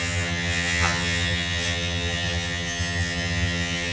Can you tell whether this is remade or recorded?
remade